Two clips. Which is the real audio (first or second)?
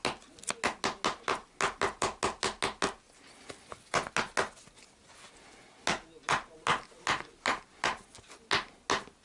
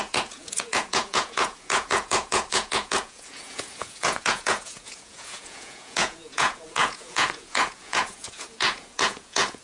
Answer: first